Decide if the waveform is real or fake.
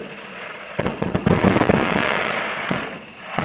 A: fake